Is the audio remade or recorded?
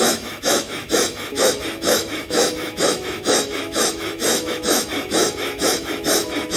remade